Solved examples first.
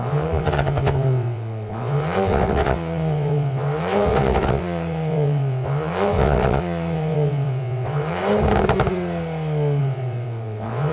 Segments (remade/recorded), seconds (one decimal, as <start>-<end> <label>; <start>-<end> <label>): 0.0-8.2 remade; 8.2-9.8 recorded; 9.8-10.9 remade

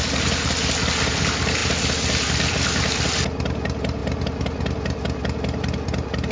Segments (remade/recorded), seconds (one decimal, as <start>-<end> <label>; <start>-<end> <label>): 0.0-6.3 recorded

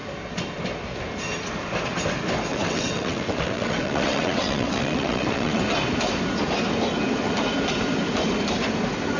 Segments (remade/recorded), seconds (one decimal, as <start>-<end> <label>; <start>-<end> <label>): 0.0-2.5 recorded; 2.5-5.6 remade; 5.6-9.2 recorded

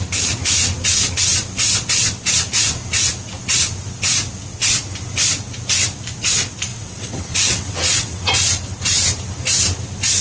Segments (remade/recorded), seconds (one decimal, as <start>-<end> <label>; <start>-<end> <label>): 0.0-6.7 recorded; 6.7-8.3 remade; 8.3-10.2 recorded

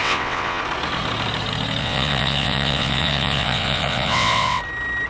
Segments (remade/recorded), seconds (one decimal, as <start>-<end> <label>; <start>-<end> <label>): 0.0-0.6 remade; 0.6-1.8 recorded; 1.8-4.6 remade; 4.6-5.1 recorded

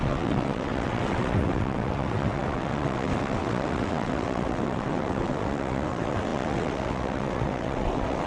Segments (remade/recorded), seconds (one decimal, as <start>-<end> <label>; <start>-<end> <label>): 0.0-8.3 remade